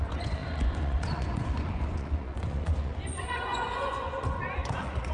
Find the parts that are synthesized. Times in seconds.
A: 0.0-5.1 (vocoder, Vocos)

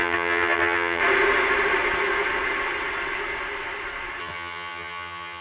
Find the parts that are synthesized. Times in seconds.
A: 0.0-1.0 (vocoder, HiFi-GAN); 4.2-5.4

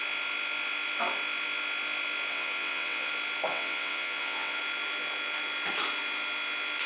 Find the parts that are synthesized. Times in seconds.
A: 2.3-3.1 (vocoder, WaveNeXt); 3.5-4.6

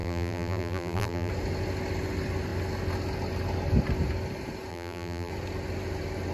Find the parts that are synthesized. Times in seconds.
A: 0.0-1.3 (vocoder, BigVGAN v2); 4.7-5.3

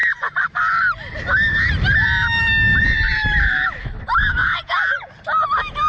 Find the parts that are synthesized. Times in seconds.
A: 4.4-5.1 (vocoder, Vocos)

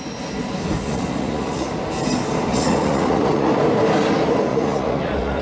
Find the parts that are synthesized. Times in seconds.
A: 0.8-1.7 (vocoder, Vocos); 2.5-3.6; 4.5-5.4

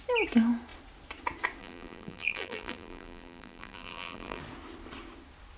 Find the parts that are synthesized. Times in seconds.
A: 1.6-4.4 (vocoder, BigVGAN v2)

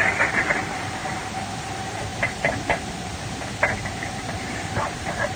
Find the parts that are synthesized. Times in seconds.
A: 0.0-1.0 (vocoder, BigVGAN v2); 1.6-2.1; 4.5-5.4